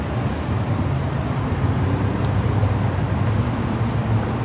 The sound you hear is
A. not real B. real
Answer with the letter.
A